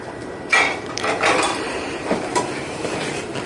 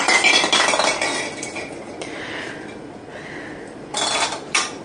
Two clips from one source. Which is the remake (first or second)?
first